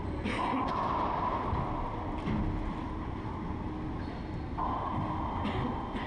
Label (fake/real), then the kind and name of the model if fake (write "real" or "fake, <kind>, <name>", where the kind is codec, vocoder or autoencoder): real